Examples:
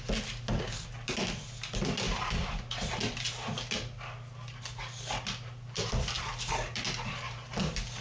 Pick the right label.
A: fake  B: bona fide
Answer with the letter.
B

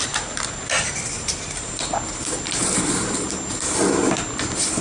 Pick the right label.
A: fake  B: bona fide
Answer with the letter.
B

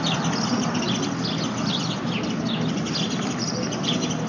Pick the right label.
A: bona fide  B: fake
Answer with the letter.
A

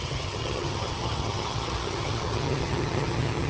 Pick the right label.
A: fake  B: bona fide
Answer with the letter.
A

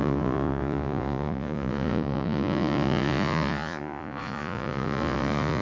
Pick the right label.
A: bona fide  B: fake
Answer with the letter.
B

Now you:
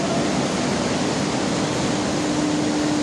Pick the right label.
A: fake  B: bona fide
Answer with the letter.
B